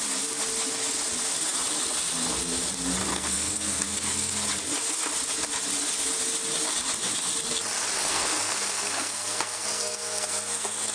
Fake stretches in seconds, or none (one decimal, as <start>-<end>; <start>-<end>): 3.1-4.3; 8.1-10.9